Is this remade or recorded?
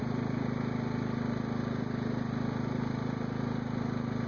recorded